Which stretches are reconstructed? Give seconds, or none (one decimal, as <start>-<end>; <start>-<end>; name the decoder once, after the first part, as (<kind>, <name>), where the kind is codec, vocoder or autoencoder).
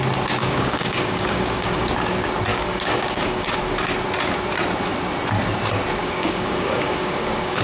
0.4-1.9 (codec, DAC); 2.5-3.6; 6.0-7.6